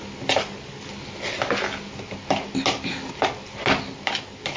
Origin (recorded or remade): recorded